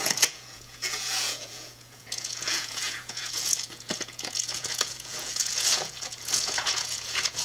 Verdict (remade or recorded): remade